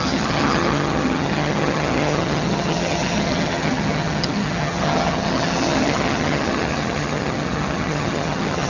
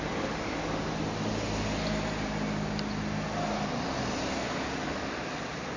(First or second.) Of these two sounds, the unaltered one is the second